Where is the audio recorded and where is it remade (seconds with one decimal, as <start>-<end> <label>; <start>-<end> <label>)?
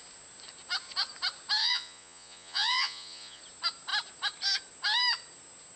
0.0-1.6 recorded; 1.6-3.4 remade; 3.4-5.8 recorded